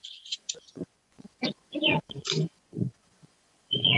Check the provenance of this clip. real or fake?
fake